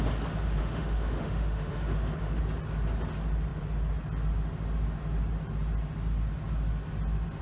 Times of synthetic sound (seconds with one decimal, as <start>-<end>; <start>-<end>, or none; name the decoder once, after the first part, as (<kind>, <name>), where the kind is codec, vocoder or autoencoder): 0.6-2.4 (autoencoder, DAC-VAE)